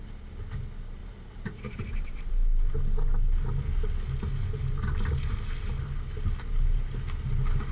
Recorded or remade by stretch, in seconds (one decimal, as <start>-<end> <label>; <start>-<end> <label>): 0.0-1.0 recorded; 1.0-2.3 remade; 2.3-7.7 recorded